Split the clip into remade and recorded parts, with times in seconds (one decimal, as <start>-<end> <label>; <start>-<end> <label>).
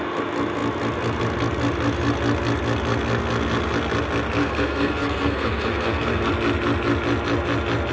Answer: 0.0-4.4 recorded; 4.4-6.3 remade; 6.3-7.9 recorded